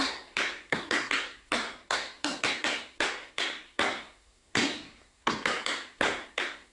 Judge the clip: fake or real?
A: fake